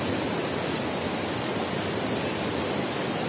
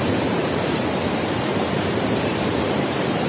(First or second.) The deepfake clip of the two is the second